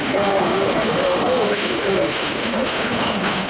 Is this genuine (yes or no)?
no